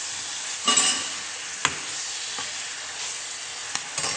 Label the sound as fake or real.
real